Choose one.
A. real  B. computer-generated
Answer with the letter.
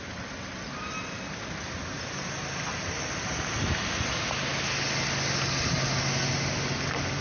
A